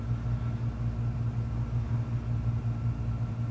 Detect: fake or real real